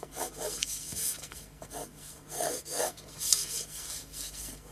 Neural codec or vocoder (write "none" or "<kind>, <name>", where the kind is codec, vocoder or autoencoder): codec, SNAC